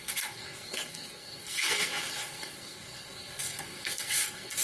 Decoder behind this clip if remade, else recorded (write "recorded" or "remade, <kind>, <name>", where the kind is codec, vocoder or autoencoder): remade, codec, SNAC